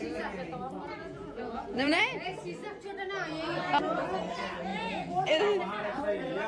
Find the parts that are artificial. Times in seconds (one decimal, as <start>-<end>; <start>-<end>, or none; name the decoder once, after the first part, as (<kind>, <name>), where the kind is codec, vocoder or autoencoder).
1.0-2.0 (vocoder, Vocos); 4.7-5.4